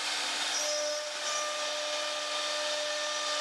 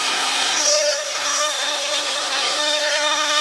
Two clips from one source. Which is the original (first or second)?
first